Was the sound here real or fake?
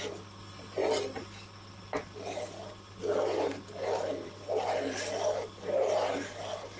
real